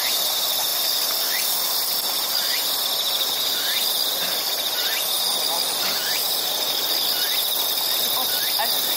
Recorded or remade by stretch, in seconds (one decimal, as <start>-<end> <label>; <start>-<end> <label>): 0.0-9.0 recorded